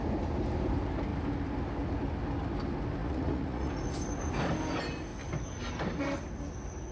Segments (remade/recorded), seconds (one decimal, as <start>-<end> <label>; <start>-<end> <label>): 0.0-3.0 recorded; 3.0-3.7 remade; 3.7-6.9 recorded

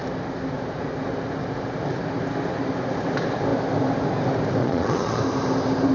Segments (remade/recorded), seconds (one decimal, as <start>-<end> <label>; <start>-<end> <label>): 0.0-4.6 recorded; 4.6-5.2 remade; 5.2-5.9 recorded

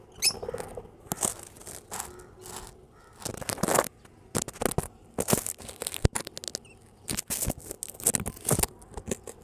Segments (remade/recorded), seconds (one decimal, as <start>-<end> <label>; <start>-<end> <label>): 0.0-9.4 recorded

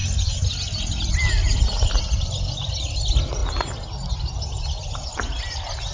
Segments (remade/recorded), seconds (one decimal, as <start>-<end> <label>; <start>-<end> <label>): 0.0-5.9 recorded

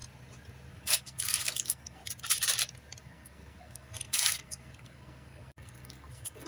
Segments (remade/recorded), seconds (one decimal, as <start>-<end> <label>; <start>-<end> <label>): 0.0-0.7 recorded; 0.7-2.0 remade; 2.0-3.0 recorded; 3.0-6.5 remade

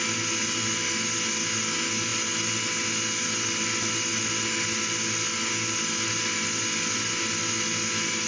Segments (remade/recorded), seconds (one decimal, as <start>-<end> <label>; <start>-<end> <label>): 0.0-8.3 recorded

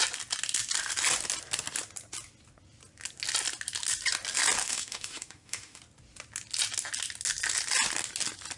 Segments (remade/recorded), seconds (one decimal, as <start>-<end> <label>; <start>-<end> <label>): 0.0-4.6 recorded; 4.6-5.8 remade; 5.8-8.6 recorded

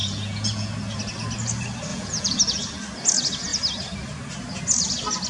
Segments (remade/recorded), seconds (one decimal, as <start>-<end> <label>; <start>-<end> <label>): 0.0-0.7 remade; 0.7-1.9 recorded; 1.9-2.4 remade; 2.4-5.3 recorded